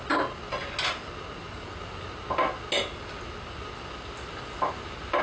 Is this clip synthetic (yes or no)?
no